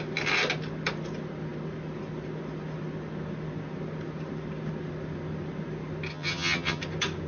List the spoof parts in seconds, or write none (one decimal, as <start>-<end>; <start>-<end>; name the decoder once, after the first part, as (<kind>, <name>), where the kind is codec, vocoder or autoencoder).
6.1-6.8 (vocoder, HiFi-GAN)